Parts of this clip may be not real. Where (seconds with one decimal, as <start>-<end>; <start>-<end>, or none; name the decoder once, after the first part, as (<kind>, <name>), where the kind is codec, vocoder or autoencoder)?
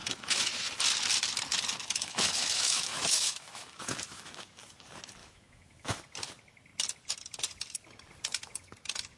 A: 0.0-0.5 (autoencoder, DAC-VAE); 1.8-4.7; 5.2-6.0